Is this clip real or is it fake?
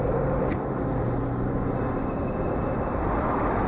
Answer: real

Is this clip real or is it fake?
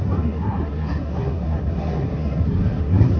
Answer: fake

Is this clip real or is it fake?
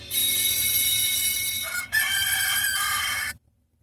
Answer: fake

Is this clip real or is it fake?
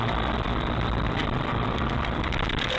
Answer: real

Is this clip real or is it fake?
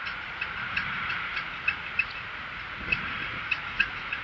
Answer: fake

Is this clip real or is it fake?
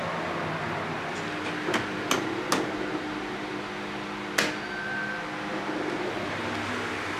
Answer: real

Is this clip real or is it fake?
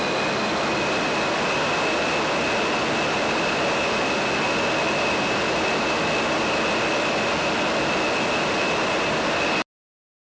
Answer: real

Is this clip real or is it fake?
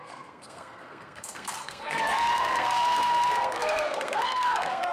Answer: fake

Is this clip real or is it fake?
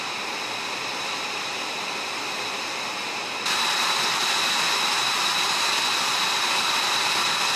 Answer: real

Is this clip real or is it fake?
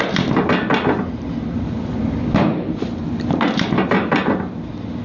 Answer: real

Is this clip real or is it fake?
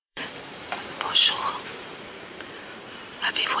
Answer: fake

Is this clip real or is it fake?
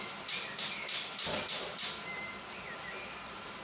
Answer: real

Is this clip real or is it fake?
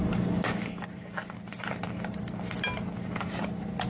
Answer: real